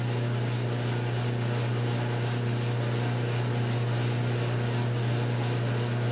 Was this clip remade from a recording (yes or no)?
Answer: no